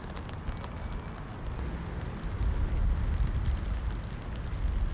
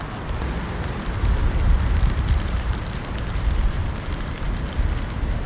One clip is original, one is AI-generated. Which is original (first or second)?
first